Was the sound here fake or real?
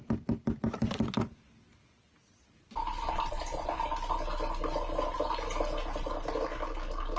real